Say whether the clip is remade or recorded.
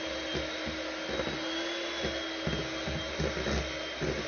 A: recorded